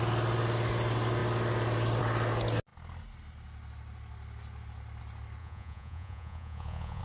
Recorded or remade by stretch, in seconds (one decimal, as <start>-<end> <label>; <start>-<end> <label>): 0.0-5.4 recorded; 5.4-7.0 remade